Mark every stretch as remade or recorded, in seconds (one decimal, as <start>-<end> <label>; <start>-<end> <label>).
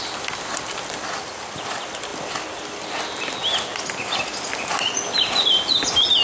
0.0-6.2 recorded